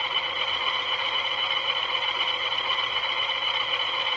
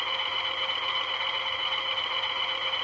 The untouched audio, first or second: second